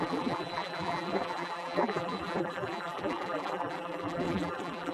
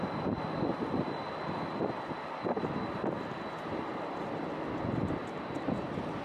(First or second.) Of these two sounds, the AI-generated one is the first